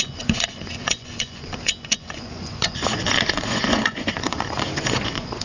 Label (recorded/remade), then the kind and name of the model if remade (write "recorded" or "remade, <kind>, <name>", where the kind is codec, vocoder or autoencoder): remade, vocoder, Vocos